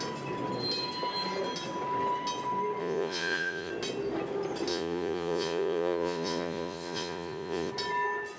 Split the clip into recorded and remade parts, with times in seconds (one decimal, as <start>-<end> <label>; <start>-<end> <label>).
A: 0.0-2.8 recorded; 2.8-3.7 remade; 3.7-4.7 recorded; 4.7-7.7 remade; 7.7-8.4 recorded